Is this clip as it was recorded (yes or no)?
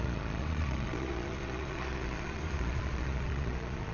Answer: no